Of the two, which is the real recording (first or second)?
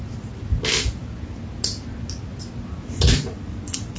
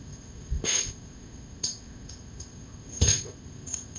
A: first